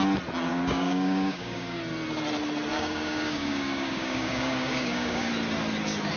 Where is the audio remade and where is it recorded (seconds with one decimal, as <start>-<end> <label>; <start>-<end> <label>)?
0.0-0.5 recorded; 0.5-1.8 remade; 1.8-2.7 recorded; 2.7-5.3 remade; 5.3-6.2 recorded